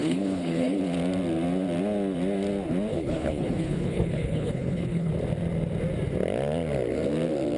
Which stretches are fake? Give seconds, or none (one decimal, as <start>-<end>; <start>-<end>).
0.0-0.8; 2.9-5.1